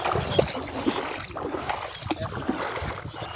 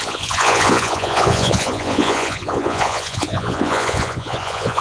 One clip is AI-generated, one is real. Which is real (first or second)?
first